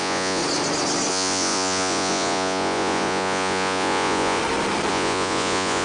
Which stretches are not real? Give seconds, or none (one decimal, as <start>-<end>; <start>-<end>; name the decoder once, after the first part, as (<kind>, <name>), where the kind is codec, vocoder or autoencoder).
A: 0.0-0.4 (vocoder, Vocos); 1.1-4.4; 4.9-5.8